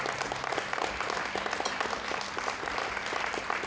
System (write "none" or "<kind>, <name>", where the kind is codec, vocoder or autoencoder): none